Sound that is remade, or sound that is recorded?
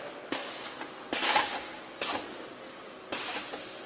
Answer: recorded